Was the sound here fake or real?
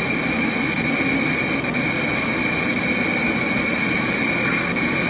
real